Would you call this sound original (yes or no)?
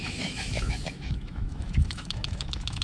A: no